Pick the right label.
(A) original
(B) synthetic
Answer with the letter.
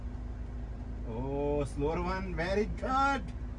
A